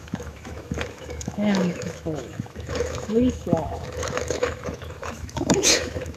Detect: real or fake fake